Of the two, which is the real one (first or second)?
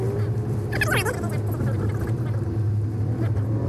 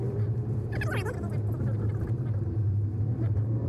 first